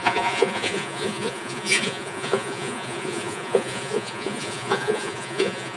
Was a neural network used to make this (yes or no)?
yes